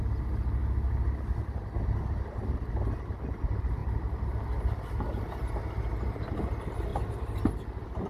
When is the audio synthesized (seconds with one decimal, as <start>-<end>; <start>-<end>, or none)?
none